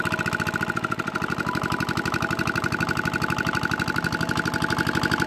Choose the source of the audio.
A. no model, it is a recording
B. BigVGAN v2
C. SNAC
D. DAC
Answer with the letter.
A